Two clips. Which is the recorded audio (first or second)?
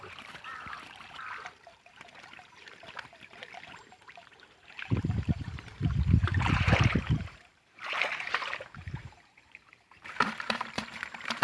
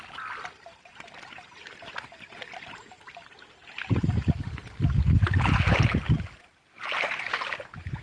second